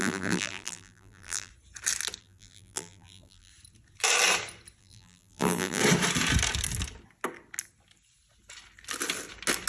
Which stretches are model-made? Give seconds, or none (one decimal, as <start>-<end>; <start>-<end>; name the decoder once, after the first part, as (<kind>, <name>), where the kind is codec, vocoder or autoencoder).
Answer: 0.0-1.5 (vocoder, BigVGAN v2); 2.2-3.5; 4.8-5.8